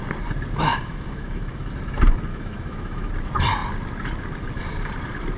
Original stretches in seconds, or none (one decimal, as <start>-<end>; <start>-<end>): 0.0-0.7; 1.7-2.3; 3.1-5.4